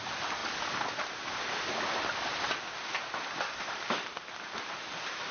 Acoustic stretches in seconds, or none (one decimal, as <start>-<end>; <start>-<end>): 0.0-5.3

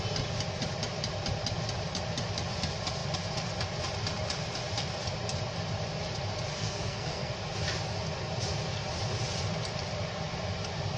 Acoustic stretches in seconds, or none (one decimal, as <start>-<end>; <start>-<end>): 0.0-6.5; 7.3-11.0

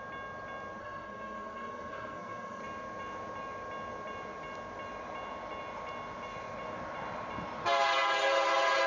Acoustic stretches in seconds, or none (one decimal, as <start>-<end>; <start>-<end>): 0.0-0.8; 2.6-8.9

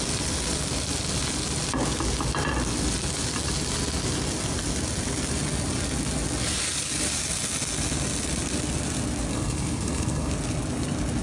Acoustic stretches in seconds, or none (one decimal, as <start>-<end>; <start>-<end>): 0.0-9.3; 10.3-11.2

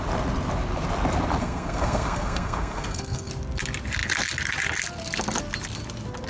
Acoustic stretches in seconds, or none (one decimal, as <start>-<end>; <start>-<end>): 0.0-1.4; 3.3-6.3

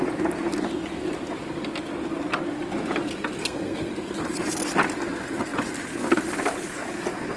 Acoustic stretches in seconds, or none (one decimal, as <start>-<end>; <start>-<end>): 0.0-3.4; 3.9-7.4

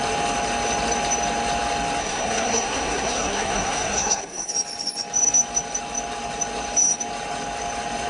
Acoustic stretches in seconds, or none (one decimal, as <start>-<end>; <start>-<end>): 0.0-2.0; 4.5-8.1